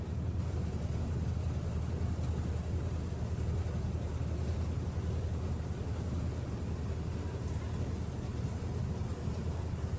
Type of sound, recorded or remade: recorded